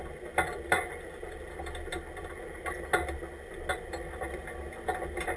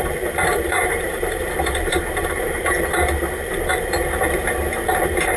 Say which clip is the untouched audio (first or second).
first